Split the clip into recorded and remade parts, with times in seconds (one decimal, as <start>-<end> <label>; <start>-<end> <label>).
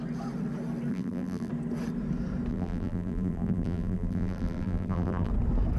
0.0-0.9 recorded; 0.9-1.5 remade; 1.5-2.5 recorded; 2.5-5.3 remade; 5.3-5.8 recorded